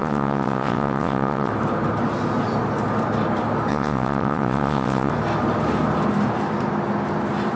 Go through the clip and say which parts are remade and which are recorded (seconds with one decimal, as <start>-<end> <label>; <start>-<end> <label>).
0.0-1.5 remade; 1.5-3.7 recorded; 3.7-5.1 remade; 5.1-7.6 recorded